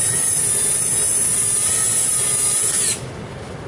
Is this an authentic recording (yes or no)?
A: no